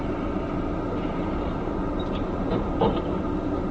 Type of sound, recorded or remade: recorded